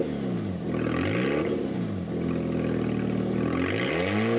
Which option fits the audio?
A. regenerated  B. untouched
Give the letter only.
B